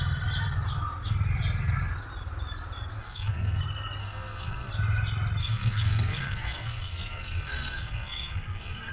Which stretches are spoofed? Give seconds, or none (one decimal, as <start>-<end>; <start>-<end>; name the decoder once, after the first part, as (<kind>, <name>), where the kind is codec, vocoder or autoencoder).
3.0-3.6 (codec, SNAC); 4.0-4.7; 5.4-8.9